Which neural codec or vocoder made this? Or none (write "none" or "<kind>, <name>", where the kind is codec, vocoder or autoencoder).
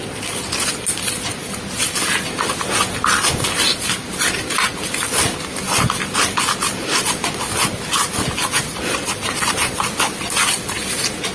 none